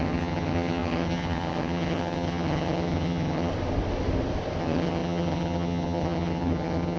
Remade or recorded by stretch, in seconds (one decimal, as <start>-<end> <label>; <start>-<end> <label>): 0.0-3.5 remade; 3.5-4.6 recorded; 4.6-7.0 remade